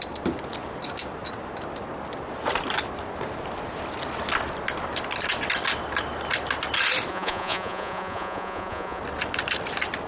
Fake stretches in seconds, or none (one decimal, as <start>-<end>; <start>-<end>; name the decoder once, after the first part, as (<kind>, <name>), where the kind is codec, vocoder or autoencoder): 7.1-9.0 (vocoder, Vocos)